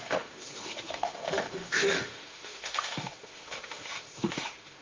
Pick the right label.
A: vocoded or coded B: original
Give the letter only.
A